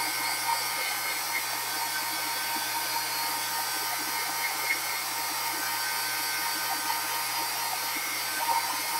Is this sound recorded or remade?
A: recorded